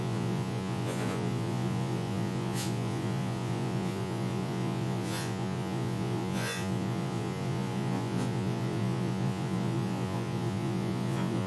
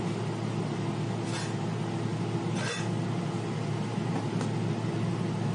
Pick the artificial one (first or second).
first